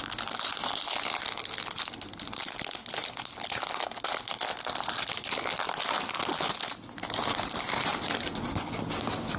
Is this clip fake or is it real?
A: real